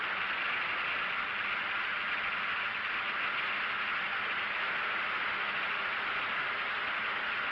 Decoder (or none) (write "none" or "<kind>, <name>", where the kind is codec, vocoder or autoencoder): none